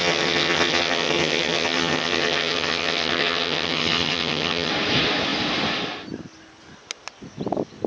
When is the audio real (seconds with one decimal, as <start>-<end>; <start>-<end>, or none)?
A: 4.7-7.9